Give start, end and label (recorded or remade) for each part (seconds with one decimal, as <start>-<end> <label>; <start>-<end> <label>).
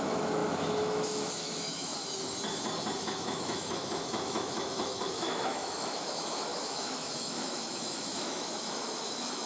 0.0-2.0 remade; 2.0-3.0 recorded; 3.0-9.5 remade